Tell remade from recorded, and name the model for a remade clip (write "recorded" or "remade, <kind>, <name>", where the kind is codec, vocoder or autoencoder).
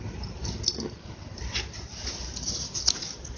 recorded